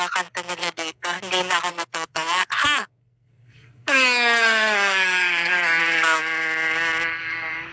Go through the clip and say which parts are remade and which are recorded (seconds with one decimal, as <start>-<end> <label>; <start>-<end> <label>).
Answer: 0.0-0.6 recorded; 0.6-1.2 remade; 1.2-1.7 recorded; 1.7-5.8 remade; 5.8-7.7 recorded